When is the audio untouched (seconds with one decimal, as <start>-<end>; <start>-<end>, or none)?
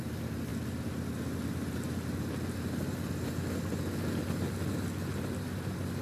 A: 0.0-6.0